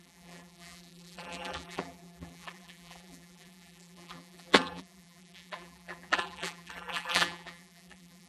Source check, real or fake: fake